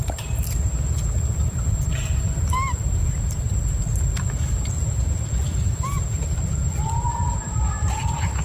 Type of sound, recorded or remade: recorded